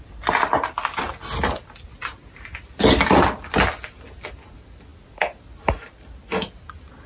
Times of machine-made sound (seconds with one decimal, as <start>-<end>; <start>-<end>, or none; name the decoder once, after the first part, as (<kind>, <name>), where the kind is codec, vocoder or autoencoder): none